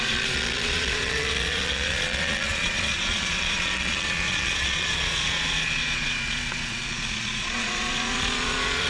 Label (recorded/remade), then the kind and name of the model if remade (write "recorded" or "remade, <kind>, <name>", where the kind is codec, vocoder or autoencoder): remade, vocoder, Vocos